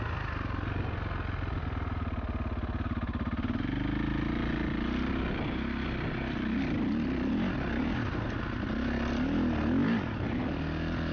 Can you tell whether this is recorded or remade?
recorded